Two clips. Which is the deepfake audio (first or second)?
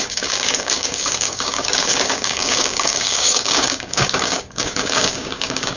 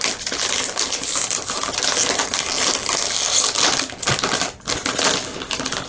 first